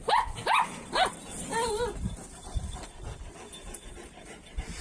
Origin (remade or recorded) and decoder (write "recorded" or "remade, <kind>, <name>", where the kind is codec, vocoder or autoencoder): recorded